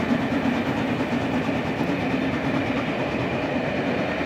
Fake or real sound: real